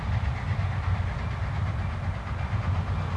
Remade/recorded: recorded